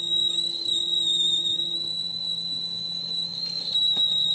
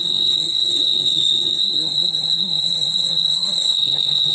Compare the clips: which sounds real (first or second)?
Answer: first